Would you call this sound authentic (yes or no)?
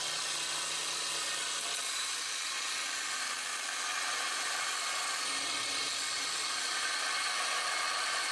yes